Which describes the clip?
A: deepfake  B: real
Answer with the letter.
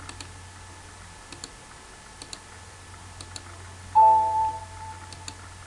B